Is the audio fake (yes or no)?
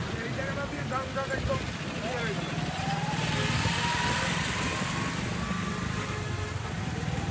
no